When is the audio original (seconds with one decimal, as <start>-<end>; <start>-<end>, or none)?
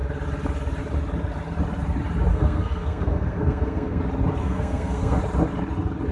0.0-2.3; 4.0-4.4; 5.2-6.1